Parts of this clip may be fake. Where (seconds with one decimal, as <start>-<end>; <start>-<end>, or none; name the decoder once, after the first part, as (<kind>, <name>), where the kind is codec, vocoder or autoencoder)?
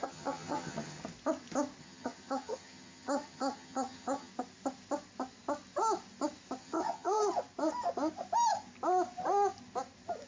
0.0-1.0 (vocoder, HiFi-GAN); 1.8-4.3; 6.6-7.2